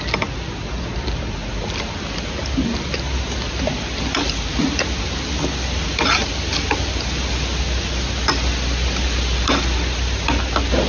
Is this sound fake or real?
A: real